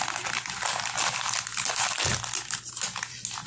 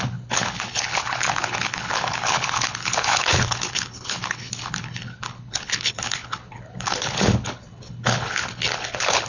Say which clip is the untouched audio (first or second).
first